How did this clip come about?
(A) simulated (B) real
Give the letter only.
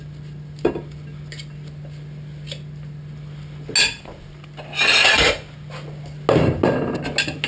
B